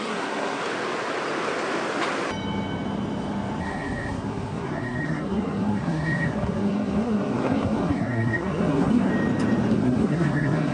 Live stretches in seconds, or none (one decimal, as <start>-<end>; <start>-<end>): 0.6-3.6; 9.1-9.7